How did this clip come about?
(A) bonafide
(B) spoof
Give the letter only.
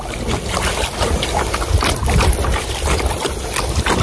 A